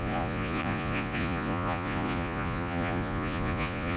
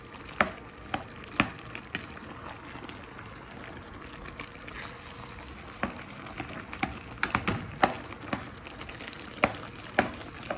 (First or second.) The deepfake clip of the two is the first